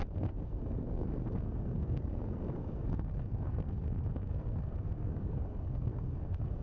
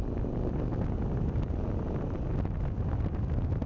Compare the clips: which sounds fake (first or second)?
first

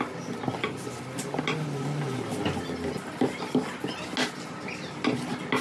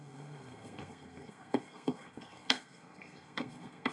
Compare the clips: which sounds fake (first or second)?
second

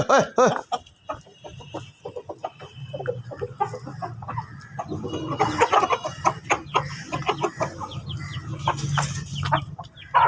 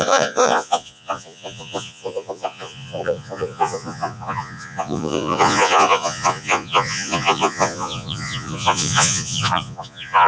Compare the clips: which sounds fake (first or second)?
second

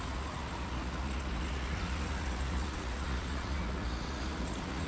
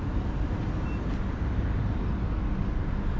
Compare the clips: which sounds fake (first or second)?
first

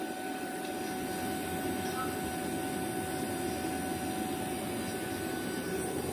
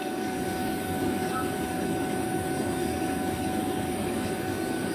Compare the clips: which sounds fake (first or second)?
second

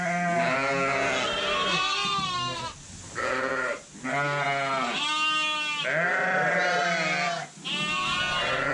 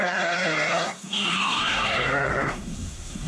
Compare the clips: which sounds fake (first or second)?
second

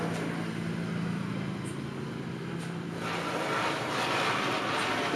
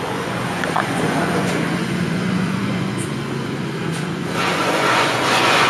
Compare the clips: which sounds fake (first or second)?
second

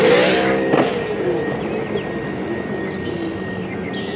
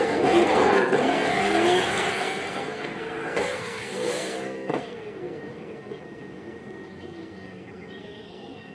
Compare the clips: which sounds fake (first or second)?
second